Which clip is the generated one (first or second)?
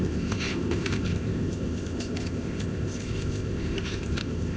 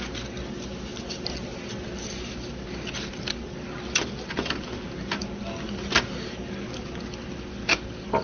first